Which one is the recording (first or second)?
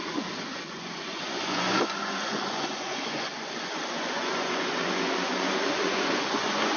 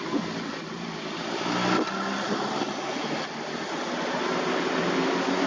second